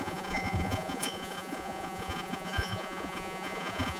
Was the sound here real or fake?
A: fake